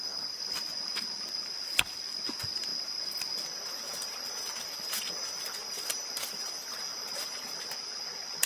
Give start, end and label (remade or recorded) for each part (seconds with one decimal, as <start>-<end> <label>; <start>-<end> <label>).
0.0-8.5 recorded